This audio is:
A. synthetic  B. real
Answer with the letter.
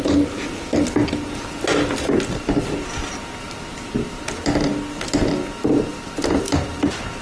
B